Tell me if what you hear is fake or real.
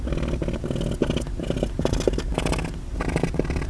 real